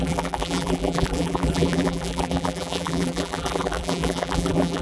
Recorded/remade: remade